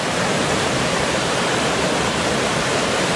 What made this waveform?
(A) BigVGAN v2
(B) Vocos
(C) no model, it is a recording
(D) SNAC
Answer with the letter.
A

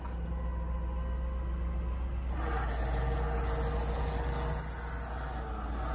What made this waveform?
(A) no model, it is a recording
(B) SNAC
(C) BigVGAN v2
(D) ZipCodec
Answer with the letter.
A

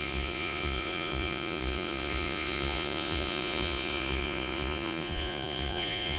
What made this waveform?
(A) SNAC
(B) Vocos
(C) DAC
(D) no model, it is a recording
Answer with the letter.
B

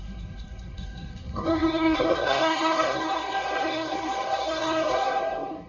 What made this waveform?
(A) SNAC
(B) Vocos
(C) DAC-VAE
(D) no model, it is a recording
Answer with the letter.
A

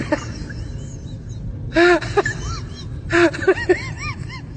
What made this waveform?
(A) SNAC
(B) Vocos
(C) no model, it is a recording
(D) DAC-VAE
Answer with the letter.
C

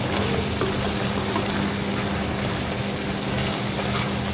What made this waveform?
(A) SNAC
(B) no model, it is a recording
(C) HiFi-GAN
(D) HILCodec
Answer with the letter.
B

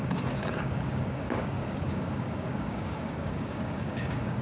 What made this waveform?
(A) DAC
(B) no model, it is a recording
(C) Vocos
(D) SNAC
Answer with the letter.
A